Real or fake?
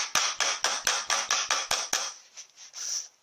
real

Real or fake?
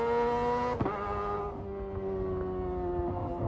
real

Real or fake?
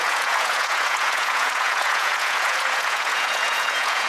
fake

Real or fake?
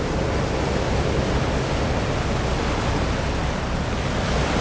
real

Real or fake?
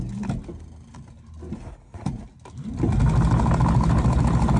real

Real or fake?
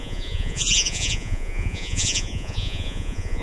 fake